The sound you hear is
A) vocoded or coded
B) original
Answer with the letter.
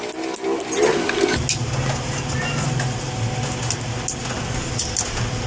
B